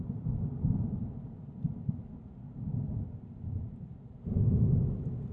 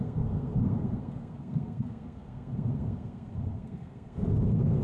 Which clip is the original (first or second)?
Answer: first